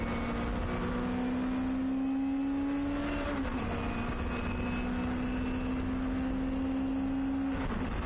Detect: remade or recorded recorded